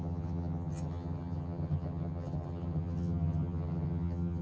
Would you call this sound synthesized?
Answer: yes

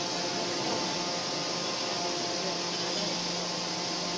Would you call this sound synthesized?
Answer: no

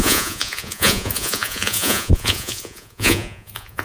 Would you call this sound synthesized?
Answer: yes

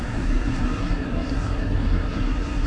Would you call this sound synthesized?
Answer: yes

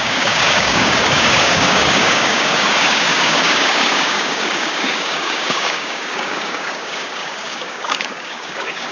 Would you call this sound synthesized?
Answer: yes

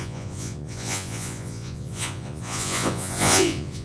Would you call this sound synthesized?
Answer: yes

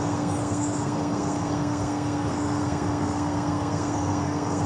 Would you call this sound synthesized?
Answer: yes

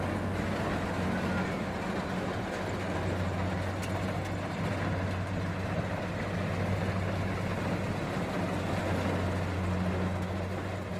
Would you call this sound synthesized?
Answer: no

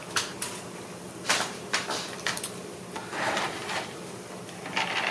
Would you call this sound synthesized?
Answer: yes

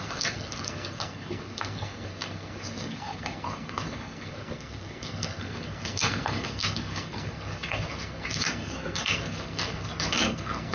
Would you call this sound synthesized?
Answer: yes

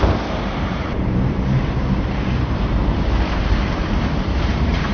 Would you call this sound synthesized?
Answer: yes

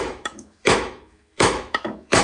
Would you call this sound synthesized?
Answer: yes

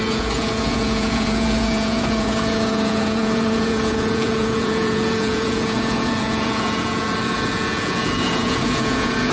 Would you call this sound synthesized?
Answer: yes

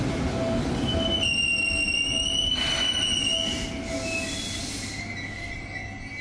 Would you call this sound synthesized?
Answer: no